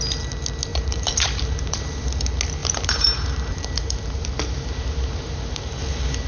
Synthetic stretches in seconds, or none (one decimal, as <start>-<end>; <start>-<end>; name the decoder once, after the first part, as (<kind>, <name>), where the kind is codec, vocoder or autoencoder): 0.7-2.2 (vocoder, BigVGAN v2); 2.6-5.7